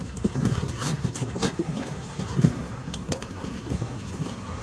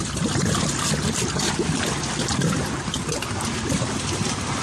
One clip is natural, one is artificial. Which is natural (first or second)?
second